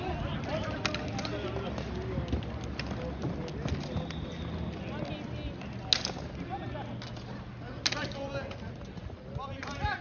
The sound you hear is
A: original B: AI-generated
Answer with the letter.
A